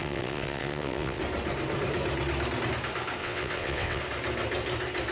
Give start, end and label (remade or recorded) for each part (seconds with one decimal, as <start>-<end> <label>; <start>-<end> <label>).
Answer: 0.0-1.2 remade; 1.2-3.2 recorded; 3.2-4.0 remade; 4.0-5.1 recorded